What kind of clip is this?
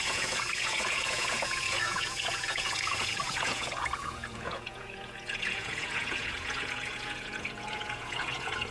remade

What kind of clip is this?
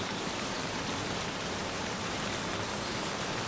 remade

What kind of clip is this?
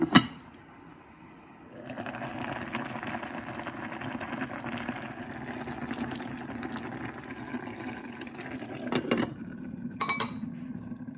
recorded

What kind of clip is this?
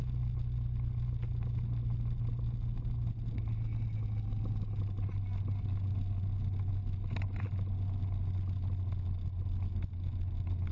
recorded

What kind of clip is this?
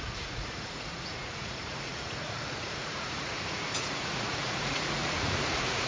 remade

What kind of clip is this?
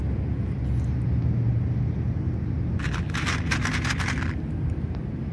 recorded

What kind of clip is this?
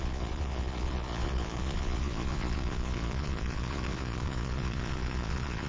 remade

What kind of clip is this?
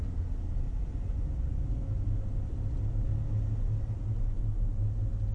recorded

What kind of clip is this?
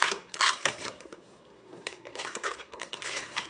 remade